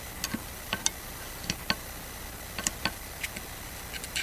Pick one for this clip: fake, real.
real